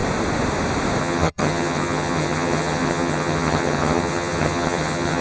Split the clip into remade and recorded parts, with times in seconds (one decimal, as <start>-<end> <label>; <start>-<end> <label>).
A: 0.0-1.0 recorded; 1.0-5.2 remade